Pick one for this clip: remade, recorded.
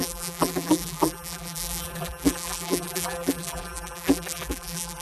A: remade